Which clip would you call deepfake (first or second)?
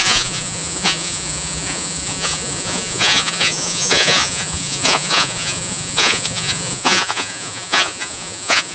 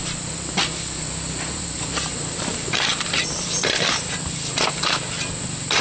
first